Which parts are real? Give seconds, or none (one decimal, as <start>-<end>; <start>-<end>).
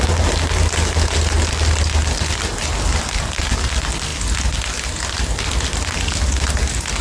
0.0-7.0